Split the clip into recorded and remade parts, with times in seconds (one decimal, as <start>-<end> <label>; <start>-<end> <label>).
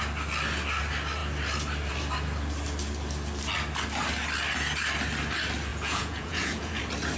0.0-5.7 recorded; 5.7-6.8 remade; 6.8-7.2 recorded